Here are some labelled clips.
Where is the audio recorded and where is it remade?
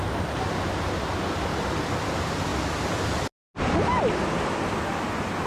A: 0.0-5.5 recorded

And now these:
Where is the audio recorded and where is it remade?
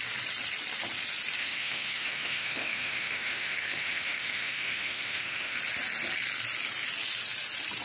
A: 0.0-1.4 recorded; 1.4-5.6 remade; 5.6-7.8 recorded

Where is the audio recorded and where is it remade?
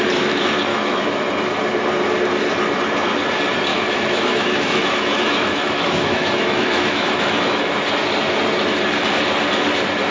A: 0.0-0.7 recorded; 0.7-1.2 remade; 1.2-3.7 recorded; 3.7-7.7 remade; 7.7-10.1 recorded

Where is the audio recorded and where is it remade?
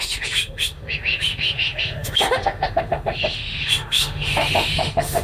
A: 0.0-5.2 remade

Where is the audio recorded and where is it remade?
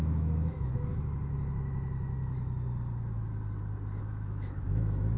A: 0.0-0.9 remade; 0.9-4.0 recorded; 4.0-5.2 remade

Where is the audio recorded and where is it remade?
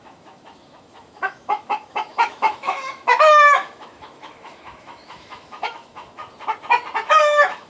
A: 0.0-6.2 remade; 6.2-7.1 recorded; 7.1-7.7 remade